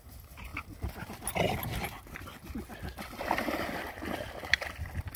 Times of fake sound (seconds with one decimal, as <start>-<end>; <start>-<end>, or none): none